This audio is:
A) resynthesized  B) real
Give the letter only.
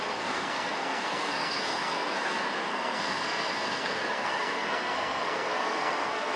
A